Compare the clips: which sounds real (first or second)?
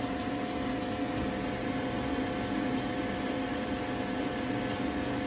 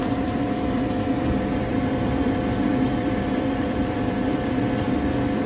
first